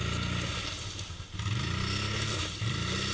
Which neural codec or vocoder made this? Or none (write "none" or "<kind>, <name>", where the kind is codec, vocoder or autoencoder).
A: none